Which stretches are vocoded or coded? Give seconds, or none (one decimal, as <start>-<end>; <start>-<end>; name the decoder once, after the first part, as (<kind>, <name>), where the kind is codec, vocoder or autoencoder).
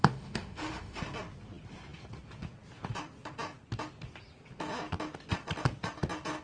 0.0-1.0 (autoencoder, DAC-VAE)